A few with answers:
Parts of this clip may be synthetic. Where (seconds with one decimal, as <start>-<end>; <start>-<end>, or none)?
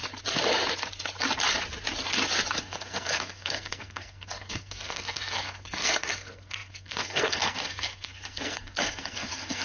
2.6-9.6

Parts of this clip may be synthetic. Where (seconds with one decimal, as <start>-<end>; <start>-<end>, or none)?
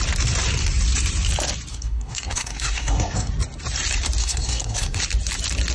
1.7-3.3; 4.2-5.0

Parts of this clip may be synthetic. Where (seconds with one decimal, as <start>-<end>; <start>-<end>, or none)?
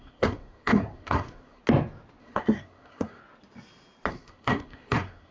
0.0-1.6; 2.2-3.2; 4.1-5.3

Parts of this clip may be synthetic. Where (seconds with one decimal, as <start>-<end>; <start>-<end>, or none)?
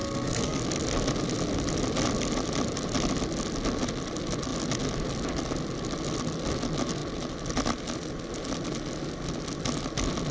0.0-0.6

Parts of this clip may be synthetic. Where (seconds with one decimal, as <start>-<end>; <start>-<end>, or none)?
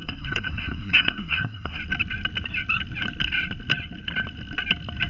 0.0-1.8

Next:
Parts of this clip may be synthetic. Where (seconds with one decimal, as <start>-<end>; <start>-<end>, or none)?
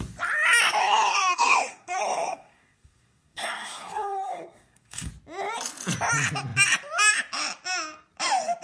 0.8-5.1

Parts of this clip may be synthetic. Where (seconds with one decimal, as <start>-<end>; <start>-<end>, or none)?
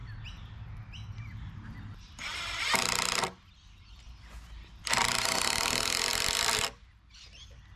none